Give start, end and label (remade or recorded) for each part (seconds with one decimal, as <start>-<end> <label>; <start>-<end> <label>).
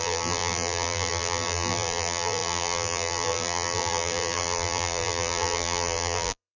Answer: 0.0-6.6 remade